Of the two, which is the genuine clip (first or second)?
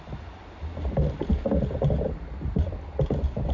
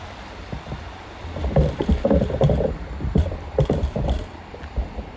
first